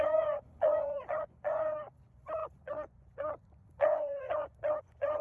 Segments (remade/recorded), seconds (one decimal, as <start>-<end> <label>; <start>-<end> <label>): 0.0-5.2 remade